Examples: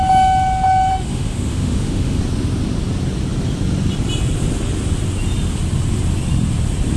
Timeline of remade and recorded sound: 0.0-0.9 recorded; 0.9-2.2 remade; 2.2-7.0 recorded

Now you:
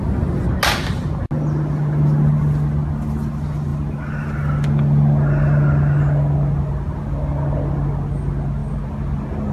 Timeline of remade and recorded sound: 0.0-9.5 recorded

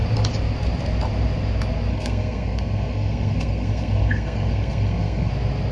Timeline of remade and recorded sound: 0.0-1.9 recorded; 1.9-5.3 remade; 5.3-5.7 recorded

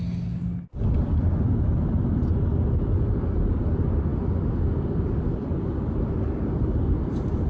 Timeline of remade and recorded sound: 0.0-0.7 recorded; 0.7-1.3 remade; 1.3-4.1 recorded; 4.1-7.5 remade

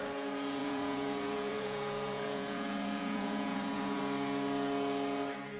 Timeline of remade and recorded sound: 0.0-0.6 recorded; 0.6-4.0 remade; 4.0-5.6 recorded